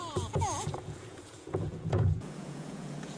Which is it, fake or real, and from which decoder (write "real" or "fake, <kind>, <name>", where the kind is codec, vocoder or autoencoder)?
fake, vocoder, Vocos